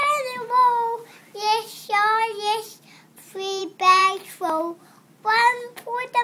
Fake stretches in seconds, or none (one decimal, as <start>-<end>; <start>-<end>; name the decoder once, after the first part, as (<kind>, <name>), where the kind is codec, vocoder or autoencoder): none